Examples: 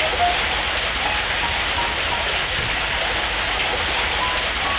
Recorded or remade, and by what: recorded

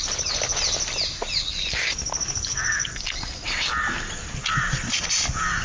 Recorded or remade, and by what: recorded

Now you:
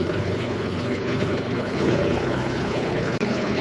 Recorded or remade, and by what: remade, codec, HILCodec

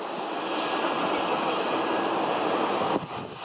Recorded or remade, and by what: recorded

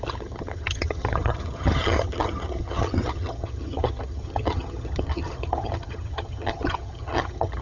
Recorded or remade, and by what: remade, vocoder, HiFi-GAN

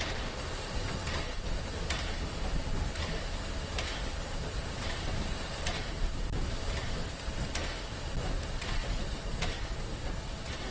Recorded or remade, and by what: recorded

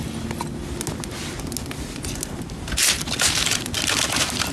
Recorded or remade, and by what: recorded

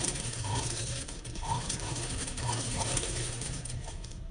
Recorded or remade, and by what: remade, codec, SNAC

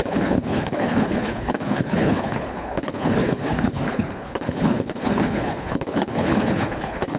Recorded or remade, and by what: remade, codec, HILCodec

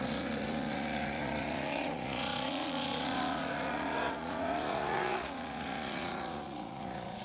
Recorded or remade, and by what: remade, vocoder, Vocos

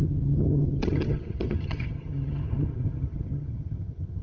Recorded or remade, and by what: remade, vocoder, HiFi-GAN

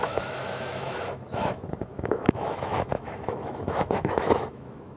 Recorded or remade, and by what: remade, autoencoder, DAC-VAE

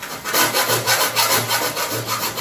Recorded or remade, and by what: recorded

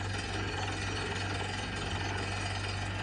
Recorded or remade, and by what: recorded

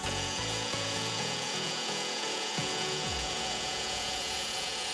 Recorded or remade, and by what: remade, vocoder, Vocos